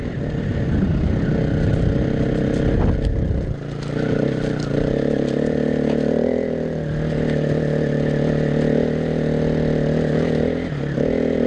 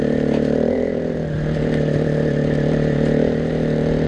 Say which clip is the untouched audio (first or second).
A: first